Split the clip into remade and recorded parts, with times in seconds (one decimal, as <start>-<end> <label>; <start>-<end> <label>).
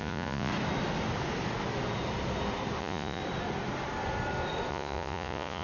0.0-0.5 remade; 0.5-2.8 recorded; 2.8-3.2 remade; 3.2-4.7 recorded; 4.7-5.6 remade